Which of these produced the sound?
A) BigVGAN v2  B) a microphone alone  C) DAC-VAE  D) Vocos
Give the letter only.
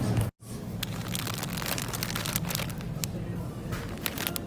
B